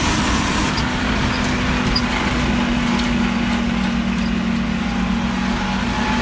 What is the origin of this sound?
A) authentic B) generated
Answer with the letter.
A